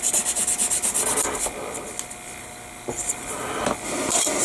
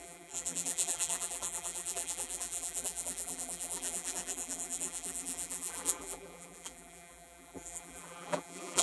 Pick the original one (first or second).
first